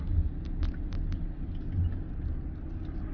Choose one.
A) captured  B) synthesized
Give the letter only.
A